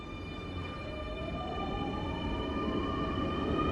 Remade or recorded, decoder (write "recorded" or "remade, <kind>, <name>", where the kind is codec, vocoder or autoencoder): recorded